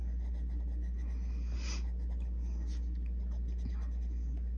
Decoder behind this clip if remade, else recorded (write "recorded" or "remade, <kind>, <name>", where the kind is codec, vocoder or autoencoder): recorded